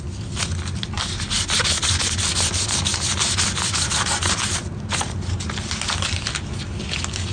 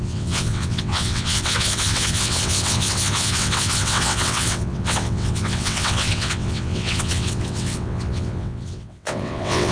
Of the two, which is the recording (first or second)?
first